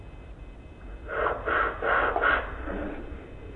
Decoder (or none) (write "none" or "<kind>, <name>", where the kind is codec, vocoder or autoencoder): none